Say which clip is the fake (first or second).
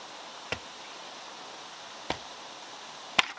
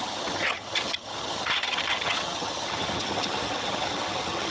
second